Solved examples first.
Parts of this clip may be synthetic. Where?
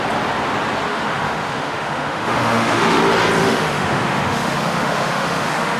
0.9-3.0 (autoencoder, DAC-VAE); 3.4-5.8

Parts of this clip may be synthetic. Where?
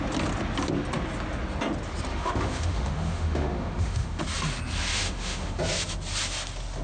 2.1-4.2 (autoencoder, DAC-VAE); 4.9-5.6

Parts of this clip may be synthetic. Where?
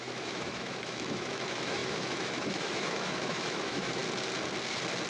0.0-4.0 (autoencoder, DAC-VAE)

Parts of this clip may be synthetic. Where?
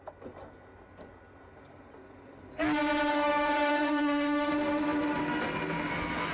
3.1-4.5 (autoencoder, DAC-VAE)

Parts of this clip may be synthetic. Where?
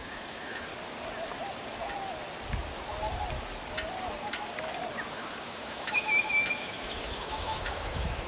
0.0-0.7 (autoencoder, DAC-VAE); 5.1-8.3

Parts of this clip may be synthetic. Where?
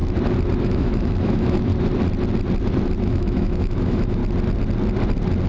0.6-1.7 (autoencoder, DAC-VAE); 3.0-4.2